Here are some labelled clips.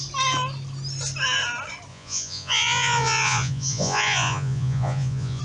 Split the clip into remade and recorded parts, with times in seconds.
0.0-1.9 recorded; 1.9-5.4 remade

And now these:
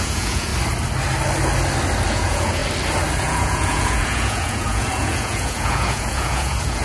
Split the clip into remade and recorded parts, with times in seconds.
0.0-0.5 remade; 0.5-2.1 recorded; 2.1-2.6 remade; 2.6-3.2 recorded; 3.2-6.8 remade

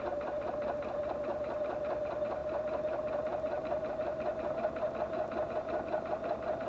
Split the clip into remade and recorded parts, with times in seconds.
0.0-6.7 recorded

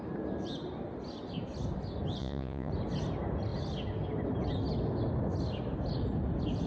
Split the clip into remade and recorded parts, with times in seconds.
0.0-2.2 recorded; 2.2-2.7 remade; 2.7-6.7 recorded

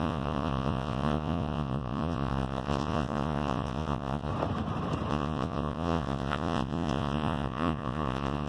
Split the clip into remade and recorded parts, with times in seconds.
0.0-4.3 remade; 4.3-5.1 recorded; 5.1-8.5 remade

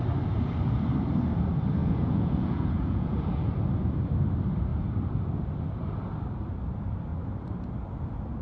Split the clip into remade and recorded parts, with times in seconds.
0.0-1.8 recorded; 1.8-3.5 remade; 3.5-8.4 recorded

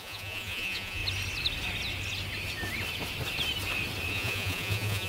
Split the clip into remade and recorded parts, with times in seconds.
0.0-1.0 remade; 1.0-4.1 recorded; 4.1-5.1 remade